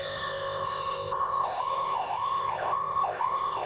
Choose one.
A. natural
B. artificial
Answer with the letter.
B